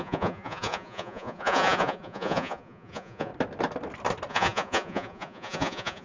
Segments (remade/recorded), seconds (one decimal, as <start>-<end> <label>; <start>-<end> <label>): 0.0-3.3 remade; 3.3-4.3 recorded; 4.3-6.0 remade